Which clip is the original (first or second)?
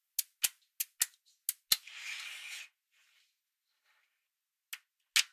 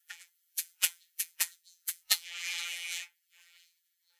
first